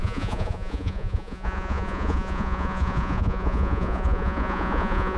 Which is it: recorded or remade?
remade